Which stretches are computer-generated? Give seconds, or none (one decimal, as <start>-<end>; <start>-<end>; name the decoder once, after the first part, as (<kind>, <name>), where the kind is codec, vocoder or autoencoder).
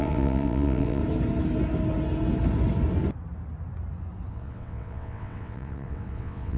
0.0-1.0 (vocoder, WaveNeXt); 4.3-6.6